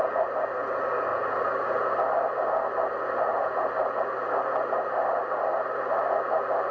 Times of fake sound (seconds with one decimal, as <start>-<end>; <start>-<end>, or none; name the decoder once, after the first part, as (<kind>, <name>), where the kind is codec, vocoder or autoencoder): none